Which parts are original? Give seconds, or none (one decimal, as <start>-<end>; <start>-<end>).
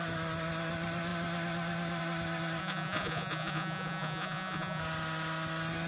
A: 0.0-2.6; 4.8-5.9